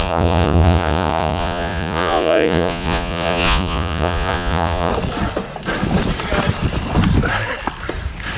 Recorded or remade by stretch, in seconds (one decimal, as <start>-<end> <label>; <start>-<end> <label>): 0.0-4.9 remade; 4.9-8.4 recorded